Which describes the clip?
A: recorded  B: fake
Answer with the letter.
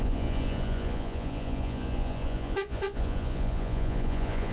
B